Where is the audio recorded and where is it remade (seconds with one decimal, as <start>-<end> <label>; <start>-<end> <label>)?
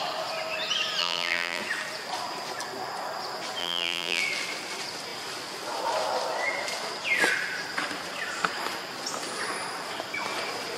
0.0-1.0 recorded; 1.0-1.6 remade; 1.6-3.6 recorded; 3.6-4.2 remade; 4.2-10.8 recorded